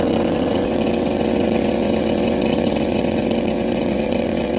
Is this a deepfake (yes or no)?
yes